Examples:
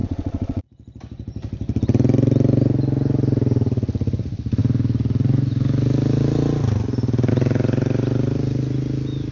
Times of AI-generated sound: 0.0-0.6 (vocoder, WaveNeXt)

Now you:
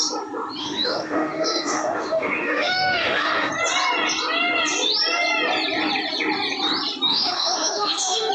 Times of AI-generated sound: 0.6-3.5 (autoencoder, DAC-VAE); 7.1-8.3

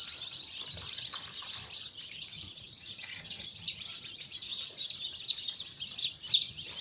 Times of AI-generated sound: 2.3-4.9 (vocoder, Vocos)

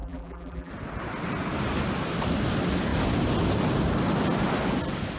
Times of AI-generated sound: 0.0-0.7 (vocoder, BigVGAN v2)

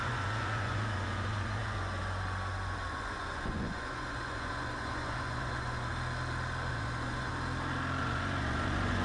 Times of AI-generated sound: 0.0-5.9 (vocoder, Vocos); 6.7-7.3; 8.0-9.0